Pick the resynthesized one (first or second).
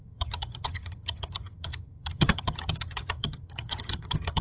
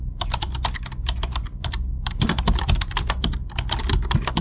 first